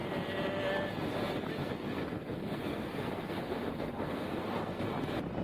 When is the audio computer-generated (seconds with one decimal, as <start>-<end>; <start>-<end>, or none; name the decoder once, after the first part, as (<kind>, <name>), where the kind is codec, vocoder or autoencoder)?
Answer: 1.6-4.8 (codec, SNAC)